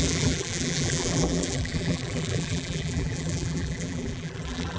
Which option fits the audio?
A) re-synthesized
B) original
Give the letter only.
A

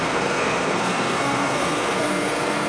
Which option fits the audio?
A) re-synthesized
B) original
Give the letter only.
A